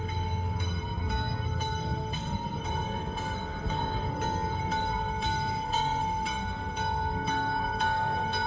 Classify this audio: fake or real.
fake